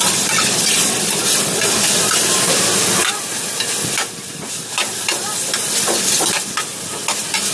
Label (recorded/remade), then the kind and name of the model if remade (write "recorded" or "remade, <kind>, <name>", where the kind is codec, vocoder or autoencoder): recorded